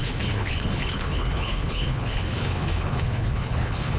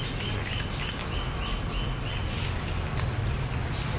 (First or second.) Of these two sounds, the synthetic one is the first